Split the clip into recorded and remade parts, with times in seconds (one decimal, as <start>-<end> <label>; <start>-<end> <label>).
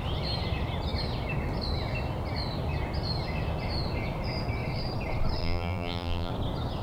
0.0-5.4 recorded; 5.4-6.3 remade; 6.3-6.8 recorded